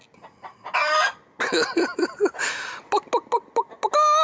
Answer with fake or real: real